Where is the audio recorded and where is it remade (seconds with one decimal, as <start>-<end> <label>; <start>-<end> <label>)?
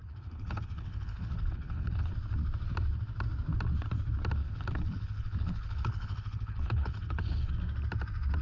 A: 0.0-2.1 remade; 2.1-4.4 recorded; 4.4-7.5 remade; 7.5-8.4 recorded